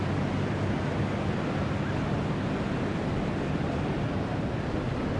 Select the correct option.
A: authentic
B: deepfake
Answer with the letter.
A